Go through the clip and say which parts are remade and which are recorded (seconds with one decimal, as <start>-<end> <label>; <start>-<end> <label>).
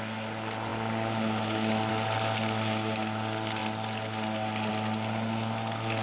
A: 0.0-6.0 recorded